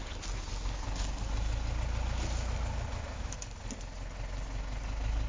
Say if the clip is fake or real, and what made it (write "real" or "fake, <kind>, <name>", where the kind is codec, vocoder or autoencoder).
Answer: real